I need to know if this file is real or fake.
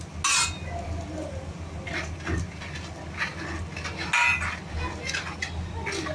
real